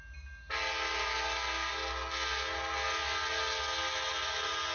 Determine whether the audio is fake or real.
real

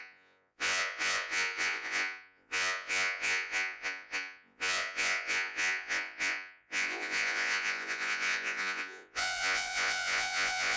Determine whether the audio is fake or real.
fake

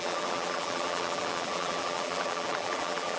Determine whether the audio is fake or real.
fake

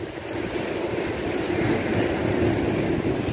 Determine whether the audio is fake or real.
real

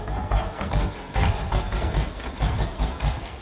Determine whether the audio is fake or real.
fake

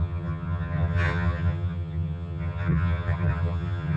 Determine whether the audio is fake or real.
fake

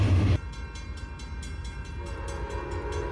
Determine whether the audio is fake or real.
real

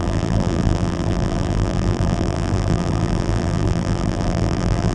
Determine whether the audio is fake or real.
fake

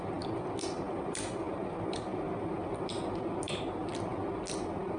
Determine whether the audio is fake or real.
real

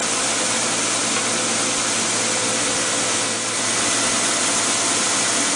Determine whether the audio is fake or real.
real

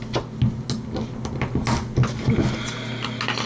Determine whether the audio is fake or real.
real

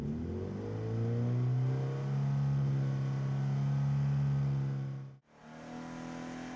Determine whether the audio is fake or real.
real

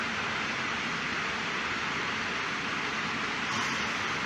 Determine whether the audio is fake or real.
real